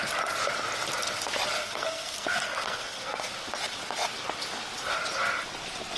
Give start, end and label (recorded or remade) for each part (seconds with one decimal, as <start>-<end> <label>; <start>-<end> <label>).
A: 0.0-1.6 recorded; 1.6-3.3 remade; 3.3-6.0 recorded

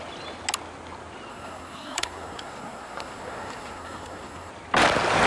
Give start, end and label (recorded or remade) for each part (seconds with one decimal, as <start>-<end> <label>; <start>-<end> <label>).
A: 0.0-1.3 recorded; 1.3-4.5 remade; 4.5-5.3 recorded

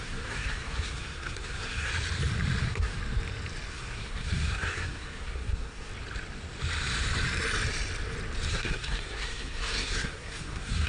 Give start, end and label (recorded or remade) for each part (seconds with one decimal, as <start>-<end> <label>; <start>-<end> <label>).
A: 0.0-1.9 remade; 1.9-2.6 recorded; 2.6-3.0 remade; 3.0-3.7 recorded; 3.7-5.9 remade; 5.9-8.5 recorded; 8.5-10.9 remade